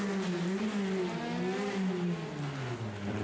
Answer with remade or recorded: recorded